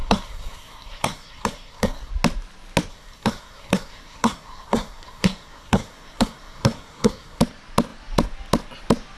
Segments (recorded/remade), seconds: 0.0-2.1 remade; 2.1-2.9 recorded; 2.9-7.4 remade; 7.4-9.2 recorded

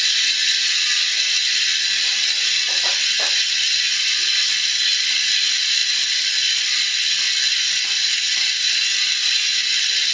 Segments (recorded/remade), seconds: 0.0-10.1 recorded

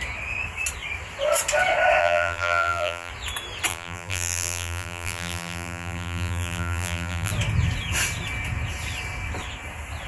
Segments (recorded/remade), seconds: 0.0-2.0 recorded; 2.0-3.1 remade; 3.1-3.7 recorded; 3.7-7.3 remade; 7.3-10.1 recorded

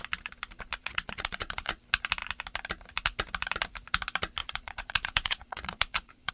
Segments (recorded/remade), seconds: 0.0-0.8 recorded; 0.8-1.8 remade; 1.8-4.4 recorded; 4.4-6.3 remade

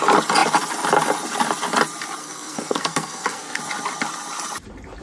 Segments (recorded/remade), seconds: 0.0-2.2 recorded; 2.2-3.6 remade; 3.6-5.0 recorded